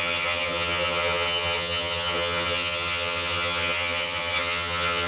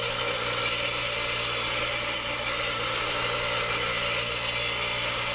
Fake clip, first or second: first